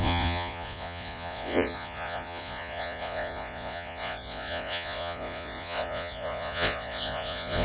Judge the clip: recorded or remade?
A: remade